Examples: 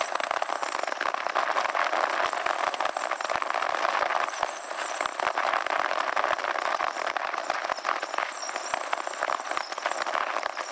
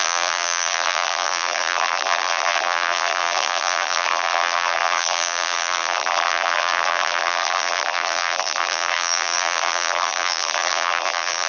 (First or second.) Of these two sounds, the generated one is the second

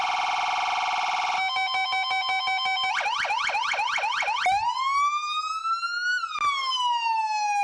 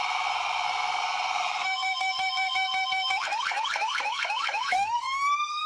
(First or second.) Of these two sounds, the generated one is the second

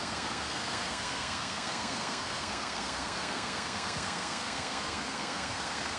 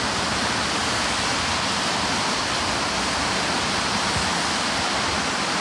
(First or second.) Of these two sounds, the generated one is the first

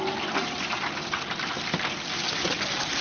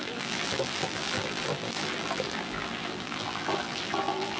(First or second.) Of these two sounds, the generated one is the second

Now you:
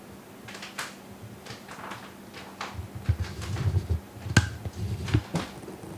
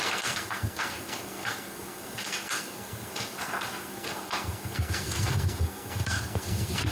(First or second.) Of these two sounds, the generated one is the second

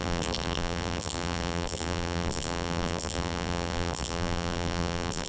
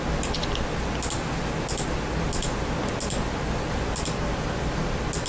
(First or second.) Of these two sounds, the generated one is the first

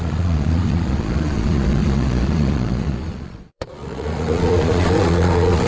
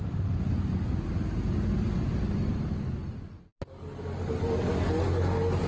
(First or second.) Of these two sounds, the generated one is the first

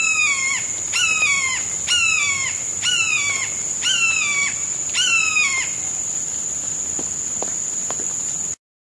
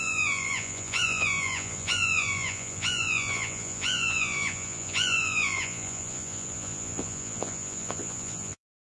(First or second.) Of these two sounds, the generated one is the second